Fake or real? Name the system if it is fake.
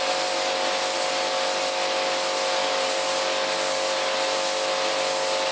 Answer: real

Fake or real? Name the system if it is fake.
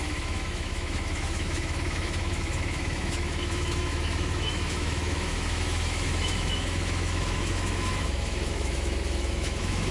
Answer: fake, autoencoder, DAC-VAE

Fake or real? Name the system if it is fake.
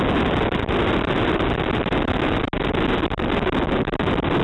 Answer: real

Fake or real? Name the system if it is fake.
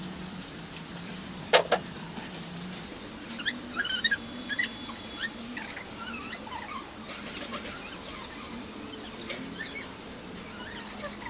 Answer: real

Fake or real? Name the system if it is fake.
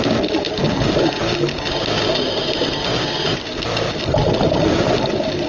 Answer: real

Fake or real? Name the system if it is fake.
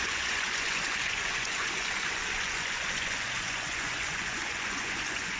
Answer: fake, vocoder, Vocos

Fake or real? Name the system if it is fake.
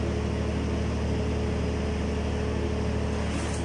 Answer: real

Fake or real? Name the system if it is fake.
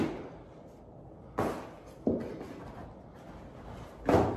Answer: real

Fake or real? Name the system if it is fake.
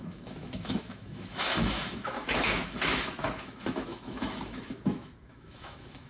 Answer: fake, autoencoder, DAC-VAE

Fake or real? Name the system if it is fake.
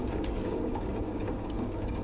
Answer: fake, codec, DAC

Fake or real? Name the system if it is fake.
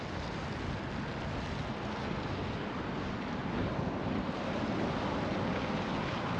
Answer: real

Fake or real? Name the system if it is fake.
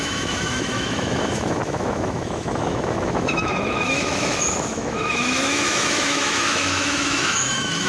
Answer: fake, autoencoder, DAC-VAE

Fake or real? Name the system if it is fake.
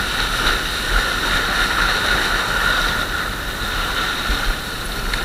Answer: real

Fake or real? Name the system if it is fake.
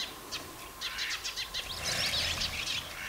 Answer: real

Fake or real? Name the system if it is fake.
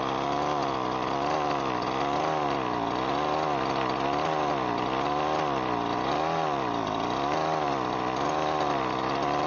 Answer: real